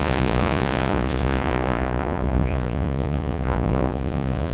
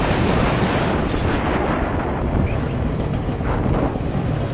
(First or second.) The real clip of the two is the second